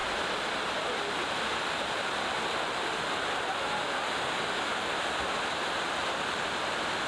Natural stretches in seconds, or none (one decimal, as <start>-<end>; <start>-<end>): 0.0-7.1